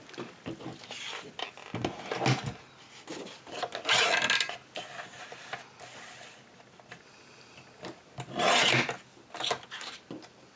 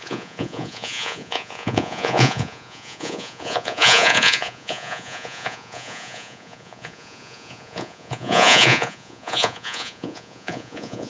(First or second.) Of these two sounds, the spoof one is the second